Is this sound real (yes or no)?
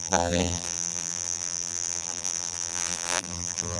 no